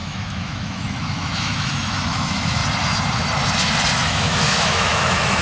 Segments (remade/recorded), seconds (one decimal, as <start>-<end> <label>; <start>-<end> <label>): 0.0-2.6 remade; 2.6-4.0 recorded; 4.0-5.4 remade